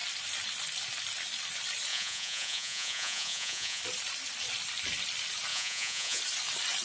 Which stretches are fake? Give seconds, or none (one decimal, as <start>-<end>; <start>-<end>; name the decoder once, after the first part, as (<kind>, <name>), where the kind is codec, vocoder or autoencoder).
1.9-3.8 (vocoder, Vocos); 5.5-6.2